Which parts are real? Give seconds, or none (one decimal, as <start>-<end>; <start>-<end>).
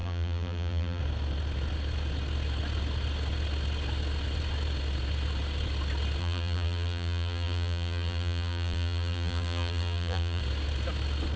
1.0-6.2; 10.4-11.4